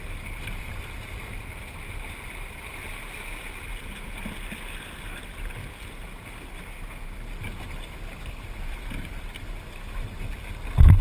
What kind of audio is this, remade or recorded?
recorded